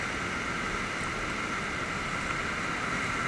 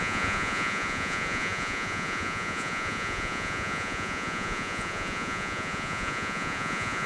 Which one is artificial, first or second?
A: second